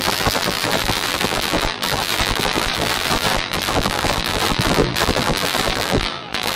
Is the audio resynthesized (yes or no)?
yes